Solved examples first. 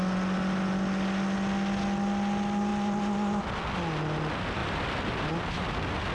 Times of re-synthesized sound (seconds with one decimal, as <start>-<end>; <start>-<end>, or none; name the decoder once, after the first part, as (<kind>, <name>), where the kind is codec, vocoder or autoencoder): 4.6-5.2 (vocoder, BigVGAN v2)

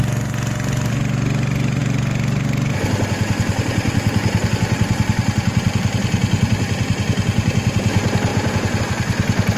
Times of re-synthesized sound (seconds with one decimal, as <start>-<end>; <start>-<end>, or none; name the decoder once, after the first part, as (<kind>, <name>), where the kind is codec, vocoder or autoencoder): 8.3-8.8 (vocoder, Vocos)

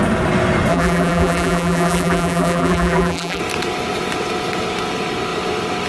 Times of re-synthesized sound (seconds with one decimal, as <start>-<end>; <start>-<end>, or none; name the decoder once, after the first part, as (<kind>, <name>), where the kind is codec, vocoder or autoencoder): 0.7-3.4 (vocoder, BigVGAN v2)